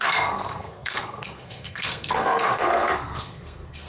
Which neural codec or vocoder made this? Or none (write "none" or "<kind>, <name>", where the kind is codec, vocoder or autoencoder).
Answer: codec, SNAC